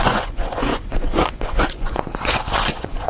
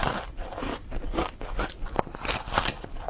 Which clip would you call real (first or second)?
second